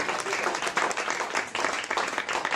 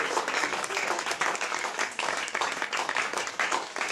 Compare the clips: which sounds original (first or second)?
first